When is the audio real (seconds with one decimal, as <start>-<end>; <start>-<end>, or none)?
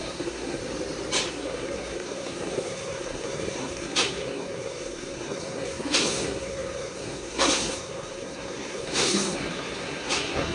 0.6-1.3